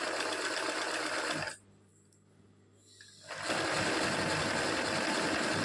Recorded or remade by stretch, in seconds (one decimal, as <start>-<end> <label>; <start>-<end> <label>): 0.0-5.6 recorded